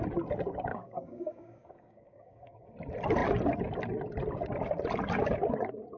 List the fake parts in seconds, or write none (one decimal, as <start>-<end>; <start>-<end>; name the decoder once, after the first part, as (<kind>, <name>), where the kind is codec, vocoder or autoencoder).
0.7-2.7 (codec, DAC)

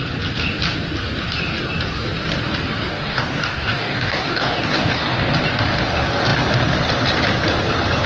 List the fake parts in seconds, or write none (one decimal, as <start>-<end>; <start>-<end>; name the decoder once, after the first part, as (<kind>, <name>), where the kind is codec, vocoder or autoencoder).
2.9-5.3 (codec, DAC)

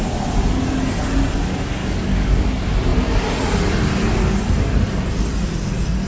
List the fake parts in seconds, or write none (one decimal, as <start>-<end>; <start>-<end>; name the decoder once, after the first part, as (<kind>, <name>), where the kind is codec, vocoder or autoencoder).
1.8-2.5 (codec, DAC)

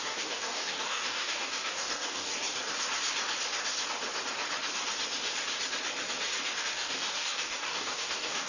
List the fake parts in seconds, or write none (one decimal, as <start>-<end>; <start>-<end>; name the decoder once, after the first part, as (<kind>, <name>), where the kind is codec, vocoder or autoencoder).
0.0-2.3 (codec, DAC); 6.6-8.5